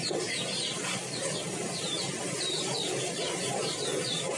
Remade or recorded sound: recorded